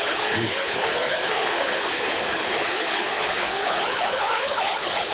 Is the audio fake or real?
fake